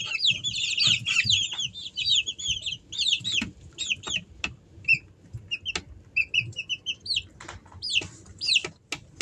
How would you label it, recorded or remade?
recorded